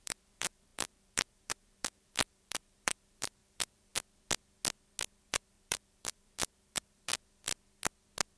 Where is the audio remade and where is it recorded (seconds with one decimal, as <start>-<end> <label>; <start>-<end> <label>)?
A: 0.0-3.9 remade; 3.9-5.2 recorded; 5.2-7.1 remade; 7.1-8.4 recorded